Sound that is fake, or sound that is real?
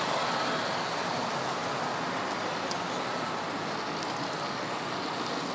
real